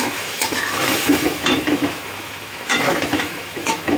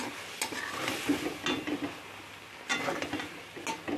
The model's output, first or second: first